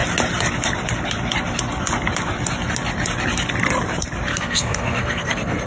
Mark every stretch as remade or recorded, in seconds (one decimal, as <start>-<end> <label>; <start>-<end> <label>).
0.0-4.3 recorded; 4.3-5.7 remade